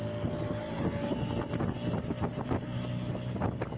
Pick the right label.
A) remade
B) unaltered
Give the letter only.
B